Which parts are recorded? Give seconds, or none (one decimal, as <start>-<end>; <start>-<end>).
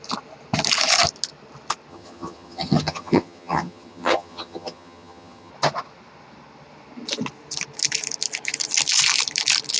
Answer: 0.0-1.9; 5.5-9.8